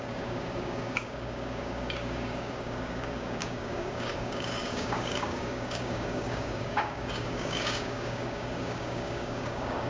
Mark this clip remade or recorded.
remade